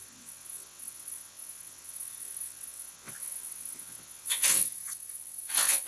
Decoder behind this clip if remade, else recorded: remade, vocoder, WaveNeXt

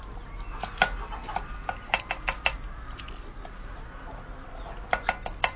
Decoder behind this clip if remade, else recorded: recorded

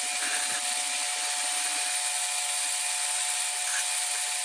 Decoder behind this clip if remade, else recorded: recorded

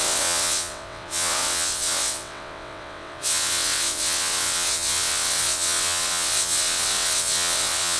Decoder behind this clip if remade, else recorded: remade, vocoder, WaveNeXt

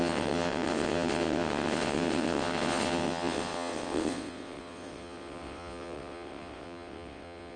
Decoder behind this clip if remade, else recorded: remade, vocoder, WaveNeXt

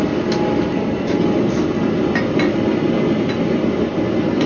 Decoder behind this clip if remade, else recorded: recorded